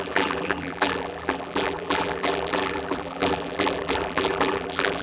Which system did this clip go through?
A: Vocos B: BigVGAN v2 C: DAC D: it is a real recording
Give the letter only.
B